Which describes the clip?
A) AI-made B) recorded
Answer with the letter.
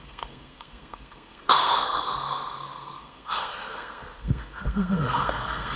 A